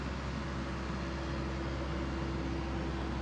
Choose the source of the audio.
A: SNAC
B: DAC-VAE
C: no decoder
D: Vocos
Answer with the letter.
C